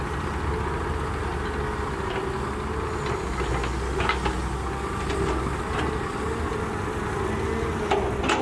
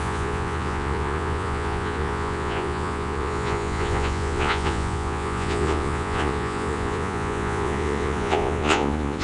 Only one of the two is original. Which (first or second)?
first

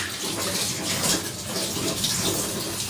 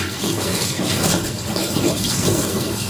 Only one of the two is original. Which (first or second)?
first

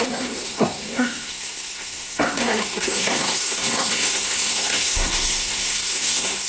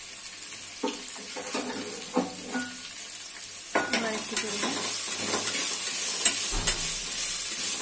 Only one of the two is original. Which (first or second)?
second